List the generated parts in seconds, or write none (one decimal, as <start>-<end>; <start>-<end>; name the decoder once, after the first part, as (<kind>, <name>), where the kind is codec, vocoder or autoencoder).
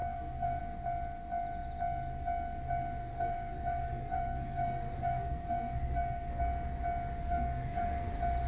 0.0-0.6 (codec, SNAC); 3.0-6.4; 7.2-8.1